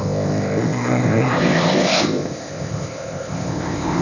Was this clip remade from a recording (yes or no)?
yes